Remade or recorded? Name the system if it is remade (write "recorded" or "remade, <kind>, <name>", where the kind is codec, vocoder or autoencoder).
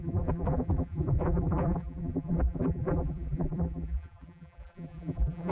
remade, vocoder, BigVGAN v2